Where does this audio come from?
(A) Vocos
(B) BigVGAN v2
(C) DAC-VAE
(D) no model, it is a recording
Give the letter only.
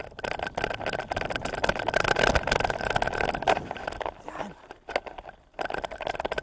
D